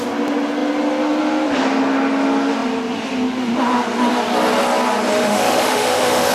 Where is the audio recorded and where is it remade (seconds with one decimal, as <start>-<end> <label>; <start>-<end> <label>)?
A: 0.0-5.1 recorded; 5.1-6.3 remade